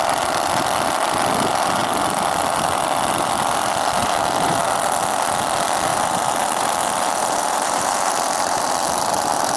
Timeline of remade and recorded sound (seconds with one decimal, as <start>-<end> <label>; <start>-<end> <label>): 0.0-4.0 recorded; 4.0-4.6 remade; 4.6-5.9 recorded; 5.9-9.6 remade